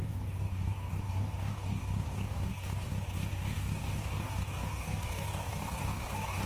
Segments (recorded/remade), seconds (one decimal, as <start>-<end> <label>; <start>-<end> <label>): 0.0-6.5 remade